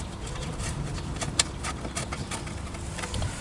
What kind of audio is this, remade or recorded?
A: remade